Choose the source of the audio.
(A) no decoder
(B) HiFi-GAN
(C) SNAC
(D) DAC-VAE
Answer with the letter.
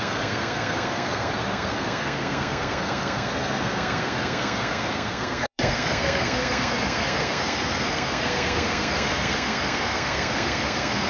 C